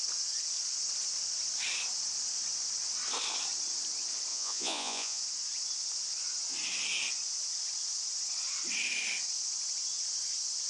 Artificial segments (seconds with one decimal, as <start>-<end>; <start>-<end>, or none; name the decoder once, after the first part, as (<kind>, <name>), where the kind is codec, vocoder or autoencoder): 4.3-5.2 (vocoder, Vocos)